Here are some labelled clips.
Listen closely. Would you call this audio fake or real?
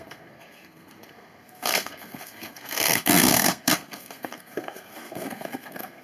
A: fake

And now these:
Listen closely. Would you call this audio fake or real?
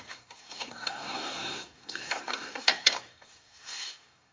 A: fake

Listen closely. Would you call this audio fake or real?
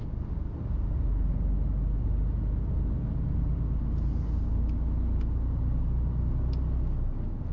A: real